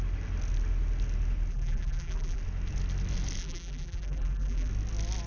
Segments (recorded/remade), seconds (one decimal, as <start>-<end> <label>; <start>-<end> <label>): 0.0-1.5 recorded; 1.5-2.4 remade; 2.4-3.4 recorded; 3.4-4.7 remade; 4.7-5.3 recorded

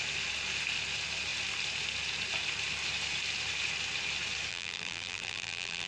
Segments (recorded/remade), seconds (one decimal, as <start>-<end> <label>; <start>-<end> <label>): 0.0-4.5 recorded; 4.5-5.9 remade

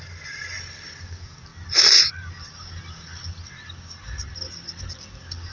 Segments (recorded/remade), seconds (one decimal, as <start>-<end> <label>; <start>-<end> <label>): 0.0-5.5 recorded

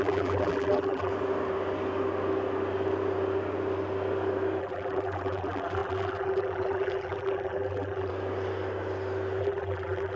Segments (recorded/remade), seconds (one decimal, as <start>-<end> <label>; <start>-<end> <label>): 0.0-1.1 remade; 1.1-4.6 recorded; 4.6-8.1 remade; 8.1-9.4 recorded; 9.4-10.2 remade